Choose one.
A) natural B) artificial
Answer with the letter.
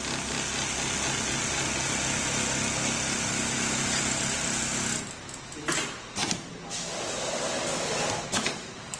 A